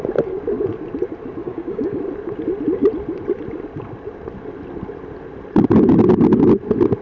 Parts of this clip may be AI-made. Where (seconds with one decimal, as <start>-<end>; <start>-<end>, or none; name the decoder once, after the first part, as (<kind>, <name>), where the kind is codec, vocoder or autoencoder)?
1.4-2.0 (codec, DAC)